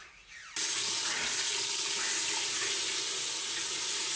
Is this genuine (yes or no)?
yes